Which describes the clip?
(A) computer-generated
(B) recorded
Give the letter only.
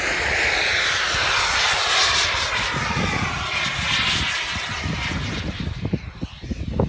B